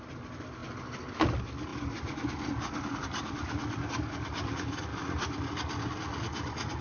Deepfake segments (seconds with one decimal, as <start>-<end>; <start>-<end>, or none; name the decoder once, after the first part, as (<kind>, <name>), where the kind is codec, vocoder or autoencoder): none

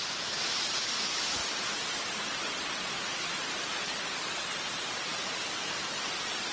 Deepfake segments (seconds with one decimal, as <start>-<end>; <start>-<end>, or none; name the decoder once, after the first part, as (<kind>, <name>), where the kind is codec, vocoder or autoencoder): 0.0-1.4 (vocoder, BigVGAN v2); 5.3-6.5

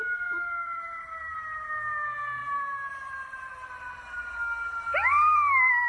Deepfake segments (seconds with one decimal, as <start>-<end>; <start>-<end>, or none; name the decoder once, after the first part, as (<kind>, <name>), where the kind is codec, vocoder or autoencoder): 0.6-1.3 (vocoder, BigVGAN v2); 2.4-3.7

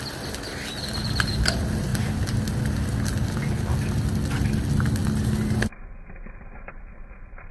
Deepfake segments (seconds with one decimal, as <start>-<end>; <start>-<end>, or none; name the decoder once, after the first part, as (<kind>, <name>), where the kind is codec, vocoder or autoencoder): 0.0-1.9 (vocoder, BigVGAN v2); 4.6-7.5

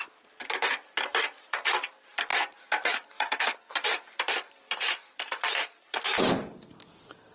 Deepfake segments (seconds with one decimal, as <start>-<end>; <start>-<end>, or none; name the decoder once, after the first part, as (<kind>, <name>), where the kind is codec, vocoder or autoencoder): 2.3-6.7 (vocoder, BigVGAN v2)

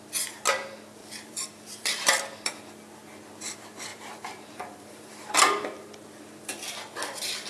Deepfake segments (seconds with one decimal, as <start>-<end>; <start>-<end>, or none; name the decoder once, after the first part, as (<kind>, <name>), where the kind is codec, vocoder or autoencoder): 1.0-2.5 (vocoder, BigVGAN v2); 3.9-5.1